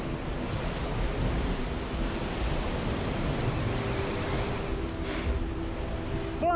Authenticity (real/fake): real